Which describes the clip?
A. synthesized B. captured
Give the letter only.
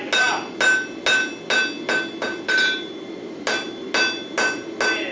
B